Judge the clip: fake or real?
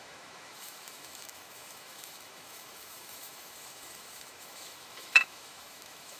fake